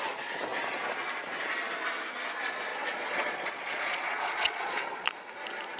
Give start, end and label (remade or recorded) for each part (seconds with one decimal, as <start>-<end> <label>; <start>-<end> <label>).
0.0-2.7 recorded; 2.7-5.1 remade; 5.1-5.8 recorded